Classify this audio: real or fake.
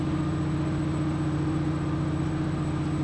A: real